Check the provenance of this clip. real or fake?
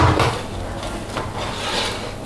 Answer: real